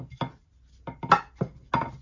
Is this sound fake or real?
real